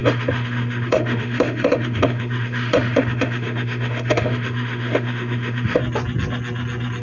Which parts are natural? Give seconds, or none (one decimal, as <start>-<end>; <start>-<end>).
5.8-7.0